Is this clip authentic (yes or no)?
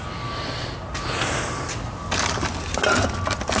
yes